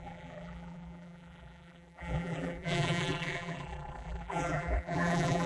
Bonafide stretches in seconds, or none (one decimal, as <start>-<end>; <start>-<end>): none